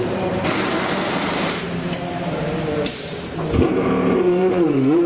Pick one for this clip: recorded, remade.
remade